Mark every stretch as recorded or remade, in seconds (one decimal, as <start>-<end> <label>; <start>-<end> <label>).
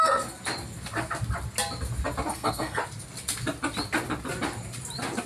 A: 0.0-2.3 recorded; 2.3-2.8 remade; 2.8-5.3 recorded